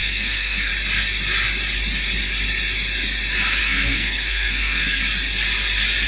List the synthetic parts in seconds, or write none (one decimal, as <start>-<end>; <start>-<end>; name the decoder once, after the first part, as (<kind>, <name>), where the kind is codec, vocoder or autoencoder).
0.0-0.7 (codec, SNAC); 3.6-5.0